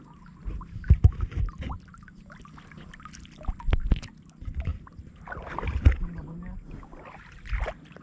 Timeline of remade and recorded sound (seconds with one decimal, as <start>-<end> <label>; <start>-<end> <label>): 0.0-8.0 recorded

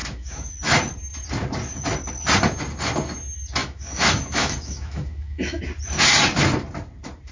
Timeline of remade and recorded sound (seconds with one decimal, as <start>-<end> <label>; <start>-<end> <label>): 0.0-0.5 remade; 0.5-3.6 recorded; 3.6-5.6 remade; 5.6-7.3 recorded

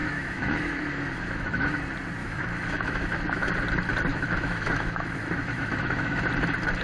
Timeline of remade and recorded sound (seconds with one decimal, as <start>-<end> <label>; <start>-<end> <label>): 0.0-1.8 remade; 1.8-2.2 recorded; 2.2-3.5 remade; 3.5-4.1 recorded; 4.1-6.2 remade; 6.2-6.8 recorded

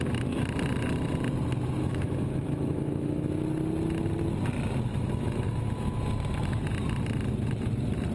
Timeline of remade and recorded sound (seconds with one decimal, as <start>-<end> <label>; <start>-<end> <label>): 0.0-1.8 recorded; 1.8-3.3 remade; 3.3-4.9 recorded; 4.9-6.0 remade; 6.0-8.1 recorded

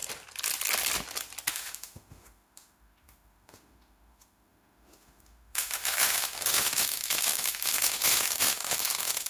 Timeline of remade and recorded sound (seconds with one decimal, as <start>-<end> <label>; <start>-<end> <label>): 0.0-1.5 recorded; 1.5-9.3 remade

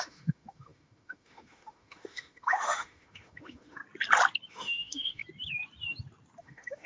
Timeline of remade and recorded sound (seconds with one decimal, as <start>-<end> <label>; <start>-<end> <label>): 0.0-3.8 remade; 3.8-4.5 recorded; 4.5-5.2 remade; 5.2-6.4 recorded; 6.4-6.9 remade

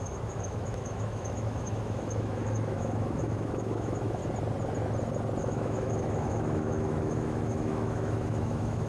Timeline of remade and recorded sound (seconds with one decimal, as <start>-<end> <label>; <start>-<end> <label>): 0.0-4.2 remade; 4.2-5.4 recorded; 5.4-8.9 remade